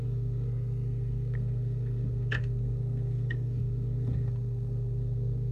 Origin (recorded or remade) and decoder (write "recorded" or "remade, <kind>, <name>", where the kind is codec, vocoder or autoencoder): remade, codec, SNAC